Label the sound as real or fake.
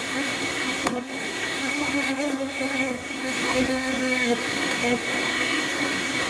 fake